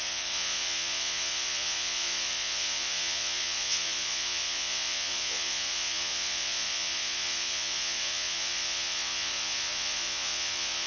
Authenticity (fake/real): fake